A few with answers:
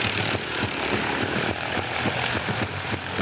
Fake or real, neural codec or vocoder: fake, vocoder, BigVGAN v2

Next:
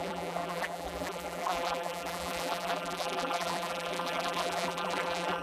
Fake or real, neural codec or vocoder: fake, vocoder, BigVGAN v2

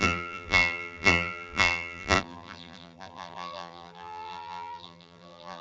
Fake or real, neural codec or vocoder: fake, vocoder, BigVGAN v2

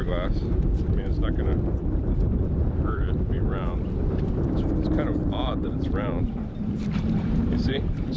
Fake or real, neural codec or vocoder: fake, vocoder, BigVGAN v2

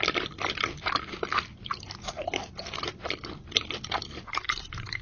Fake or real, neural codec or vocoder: fake, vocoder, BigVGAN v2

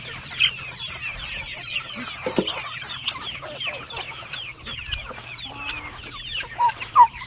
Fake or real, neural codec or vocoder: fake, vocoder, BigVGAN v2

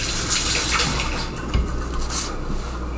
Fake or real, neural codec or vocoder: real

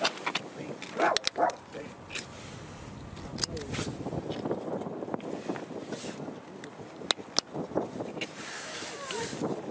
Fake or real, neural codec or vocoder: real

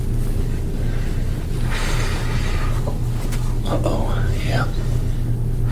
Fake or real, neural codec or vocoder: real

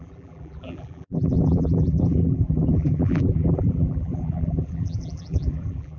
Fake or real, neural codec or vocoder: fake, vocoder, BigVGAN v2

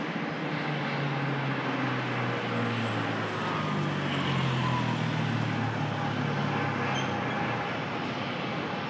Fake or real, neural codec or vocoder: real